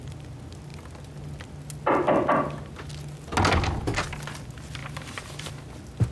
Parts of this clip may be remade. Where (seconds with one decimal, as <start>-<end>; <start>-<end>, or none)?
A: 4.8-5.5